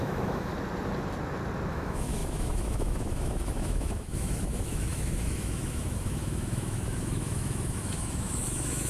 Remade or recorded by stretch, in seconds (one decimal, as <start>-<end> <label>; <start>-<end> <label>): 0.0-0.5 remade; 0.5-1.7 recorded; 1.7-8.9 remade